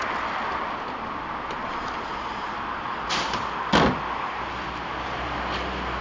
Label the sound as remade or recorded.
recorded